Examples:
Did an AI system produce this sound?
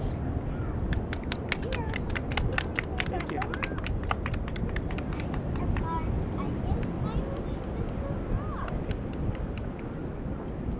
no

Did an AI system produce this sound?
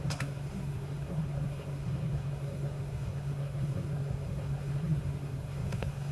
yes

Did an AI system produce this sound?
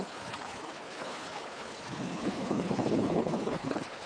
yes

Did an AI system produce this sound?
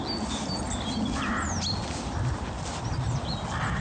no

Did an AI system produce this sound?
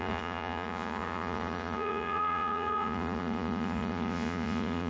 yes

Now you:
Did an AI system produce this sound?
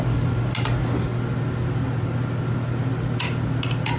no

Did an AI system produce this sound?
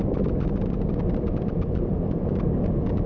no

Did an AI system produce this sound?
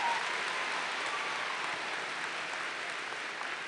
no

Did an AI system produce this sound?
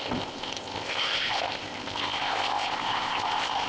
yes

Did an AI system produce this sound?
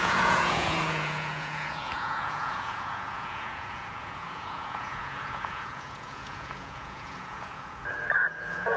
yes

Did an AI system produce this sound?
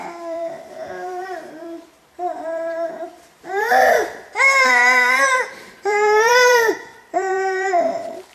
yes